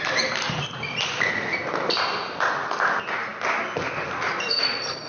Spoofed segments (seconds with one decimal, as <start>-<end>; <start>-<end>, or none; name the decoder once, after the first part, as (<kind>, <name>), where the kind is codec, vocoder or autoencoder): none